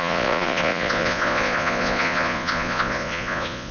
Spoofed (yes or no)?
yes